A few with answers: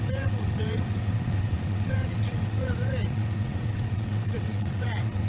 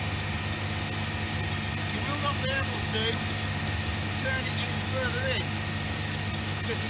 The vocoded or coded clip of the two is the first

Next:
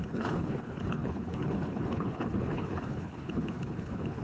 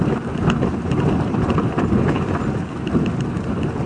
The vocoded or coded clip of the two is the first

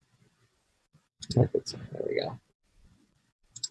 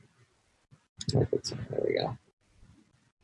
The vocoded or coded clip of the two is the first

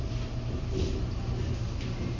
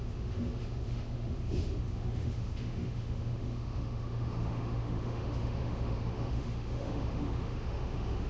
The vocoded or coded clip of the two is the second